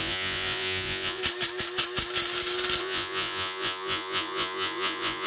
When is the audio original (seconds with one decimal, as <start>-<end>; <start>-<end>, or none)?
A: 1.2-2.8